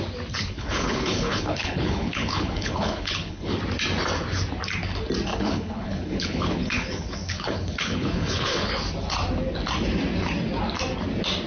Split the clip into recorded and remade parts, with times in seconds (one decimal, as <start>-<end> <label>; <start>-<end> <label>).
0.0-0.4 recorded; 0.4-3.6 remade; 3.6-5.3 recorded; 5.3-8.7 remade; 8.7-11.5 recorded

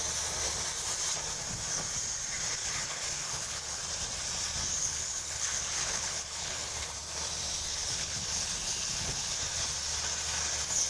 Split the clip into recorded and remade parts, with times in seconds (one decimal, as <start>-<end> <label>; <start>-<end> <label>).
0.0-2.6 recorded; 2.6-3.8 remade; 3.8-4.8 recorded; 4.8-6.9 remade; 6.9-7.7 recorded; 7.7-9.4 remade; 9.4-10.9 recorded

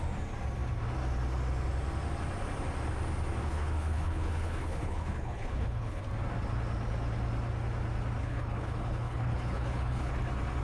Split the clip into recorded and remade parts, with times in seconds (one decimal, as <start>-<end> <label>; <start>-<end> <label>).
0.0-3.4 recorded; 3.4-6.0 remade; 6.0-8.2 recorded; 8.2-10.1 remade; 10.1-10.6 recorded